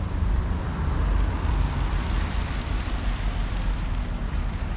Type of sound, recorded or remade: remade